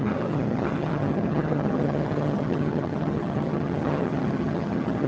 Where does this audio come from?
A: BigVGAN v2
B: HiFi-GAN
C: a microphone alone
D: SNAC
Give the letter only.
B